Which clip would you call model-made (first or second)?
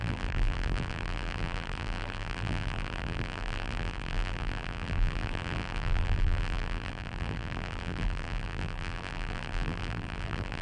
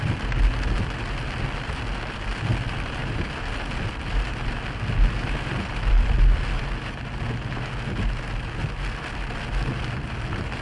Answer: first